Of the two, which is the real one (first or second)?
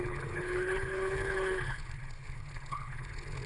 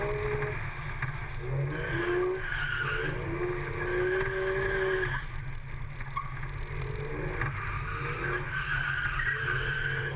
second